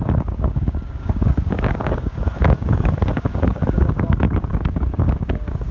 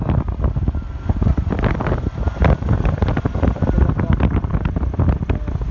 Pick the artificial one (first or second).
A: first